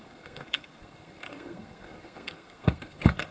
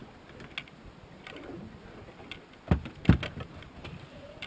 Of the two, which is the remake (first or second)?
first